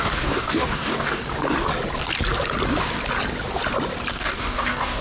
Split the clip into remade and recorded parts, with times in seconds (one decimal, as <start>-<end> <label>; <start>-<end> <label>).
0.0-1.2 remade; 1.2-4.1 recorded; 4.1-5.0 remade